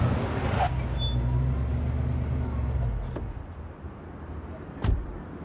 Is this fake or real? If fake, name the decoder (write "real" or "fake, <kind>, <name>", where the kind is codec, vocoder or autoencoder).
real